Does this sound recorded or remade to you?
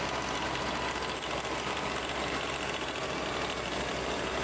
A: recorded